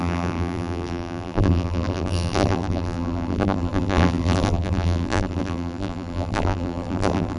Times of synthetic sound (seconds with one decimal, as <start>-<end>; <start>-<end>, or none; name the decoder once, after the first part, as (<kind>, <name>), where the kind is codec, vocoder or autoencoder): 0.0-7.4 (vocoder, BigVGAN v2)